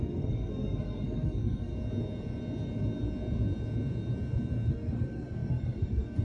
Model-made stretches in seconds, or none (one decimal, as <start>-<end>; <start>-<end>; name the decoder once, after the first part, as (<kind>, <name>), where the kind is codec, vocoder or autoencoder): 0.0-1.7 (codec, SNAC); 4.7-6.2

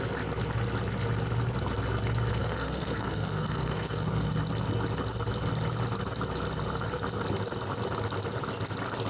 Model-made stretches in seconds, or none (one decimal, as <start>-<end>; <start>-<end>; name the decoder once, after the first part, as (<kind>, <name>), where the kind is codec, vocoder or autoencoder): 2.3-4.3 (codec, SNAC)

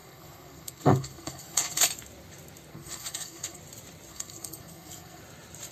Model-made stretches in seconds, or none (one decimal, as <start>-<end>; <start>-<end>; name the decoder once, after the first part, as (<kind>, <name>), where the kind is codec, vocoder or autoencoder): 0.0-1.9 (codec, SNAC); 2.7-3.6; 4.1-5.2